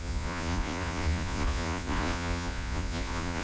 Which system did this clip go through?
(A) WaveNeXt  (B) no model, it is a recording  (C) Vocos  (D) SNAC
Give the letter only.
C